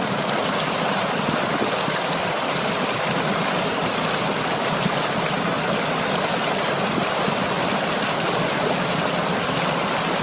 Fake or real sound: real